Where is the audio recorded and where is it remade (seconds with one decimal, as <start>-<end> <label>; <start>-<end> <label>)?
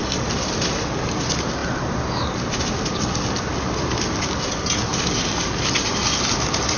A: 0.0-6.8 recorded